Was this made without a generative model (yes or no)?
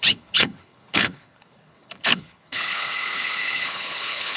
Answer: no